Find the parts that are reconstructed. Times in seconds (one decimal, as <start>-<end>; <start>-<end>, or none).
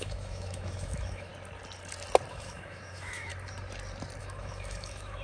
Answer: 0.0-1.3; 2.3-3.3; 4.2-5.2